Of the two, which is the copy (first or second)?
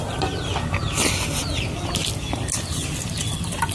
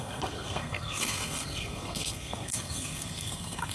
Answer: second